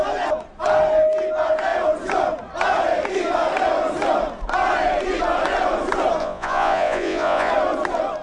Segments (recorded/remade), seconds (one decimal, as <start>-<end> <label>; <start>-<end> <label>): 0.0-6.2 recorded; 6.2-7.5 remade; 7.5-8.2 recorded